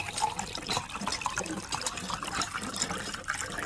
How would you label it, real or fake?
real